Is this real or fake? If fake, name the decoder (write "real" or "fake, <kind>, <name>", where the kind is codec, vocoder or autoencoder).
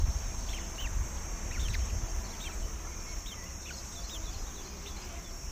real